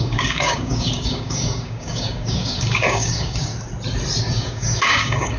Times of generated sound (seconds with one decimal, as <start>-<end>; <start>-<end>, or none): 0.0-3.5; 4.2-5.4